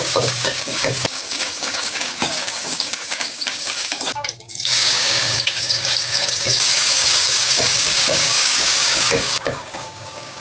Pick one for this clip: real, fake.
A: fake